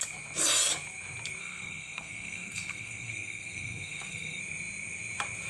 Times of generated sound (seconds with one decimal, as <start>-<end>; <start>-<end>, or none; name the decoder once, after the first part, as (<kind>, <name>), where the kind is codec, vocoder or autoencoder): 1.4-4.4 (codec, SNAC)